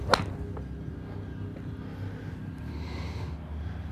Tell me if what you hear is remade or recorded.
recorded